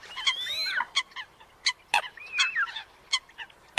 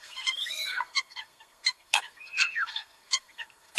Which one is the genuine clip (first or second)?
first